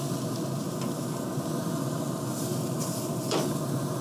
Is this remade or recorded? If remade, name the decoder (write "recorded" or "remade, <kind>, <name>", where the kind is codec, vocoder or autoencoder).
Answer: recorded